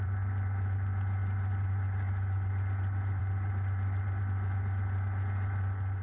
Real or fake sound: real